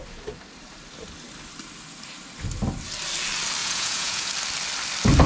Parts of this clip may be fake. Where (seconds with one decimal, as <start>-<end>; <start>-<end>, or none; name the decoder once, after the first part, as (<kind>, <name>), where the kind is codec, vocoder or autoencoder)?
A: 3.6-4.3 (vocoder, Vocos)